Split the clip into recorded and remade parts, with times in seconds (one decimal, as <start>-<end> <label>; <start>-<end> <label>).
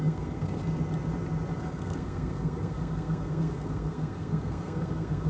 0.0-0.6 remade; 0.6-1.6 recorded; 1.6-5.3 remade